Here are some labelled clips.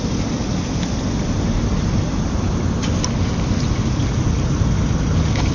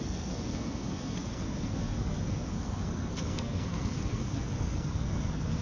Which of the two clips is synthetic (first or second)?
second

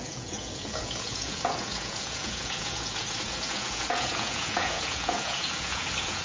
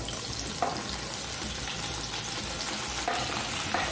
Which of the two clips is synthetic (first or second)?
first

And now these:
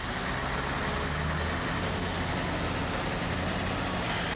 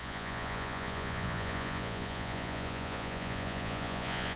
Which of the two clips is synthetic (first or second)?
second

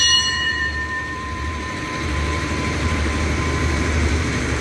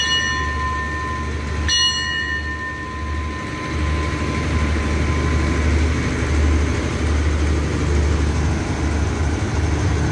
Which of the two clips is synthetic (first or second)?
first